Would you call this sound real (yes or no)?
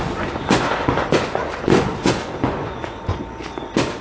no